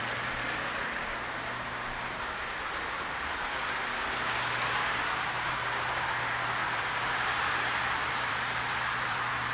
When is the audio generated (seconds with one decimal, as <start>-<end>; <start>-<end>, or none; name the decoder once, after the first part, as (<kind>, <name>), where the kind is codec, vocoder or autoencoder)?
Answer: 6.6-9.5 (vocoder, BigVGAN v2)